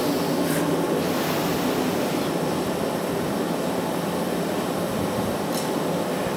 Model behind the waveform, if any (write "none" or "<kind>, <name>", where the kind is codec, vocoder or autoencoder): none